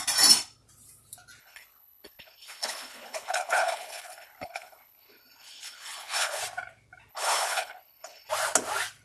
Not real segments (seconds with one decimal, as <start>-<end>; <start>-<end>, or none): 1.4-6.4; 7.1-8.3